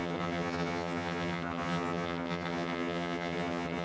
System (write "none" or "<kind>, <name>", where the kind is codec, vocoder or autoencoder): vocoder, HiFi-GAN